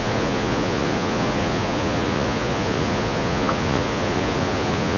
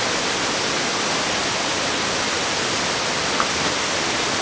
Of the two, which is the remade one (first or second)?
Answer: first